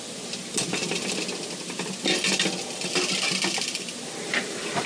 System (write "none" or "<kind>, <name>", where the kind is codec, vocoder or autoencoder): none